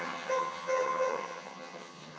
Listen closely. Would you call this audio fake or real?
fake